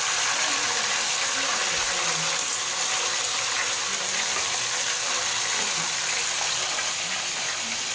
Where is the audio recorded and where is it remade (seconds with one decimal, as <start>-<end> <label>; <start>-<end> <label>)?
0.0-3.9 recorded; 3.9-5.5 remade; 5.5-7.9 recorded